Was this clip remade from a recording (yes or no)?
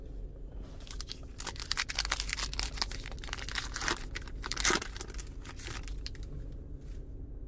no